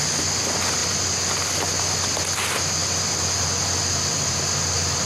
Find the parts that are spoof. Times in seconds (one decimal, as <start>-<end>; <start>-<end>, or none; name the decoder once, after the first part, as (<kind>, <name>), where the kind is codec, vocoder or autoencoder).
none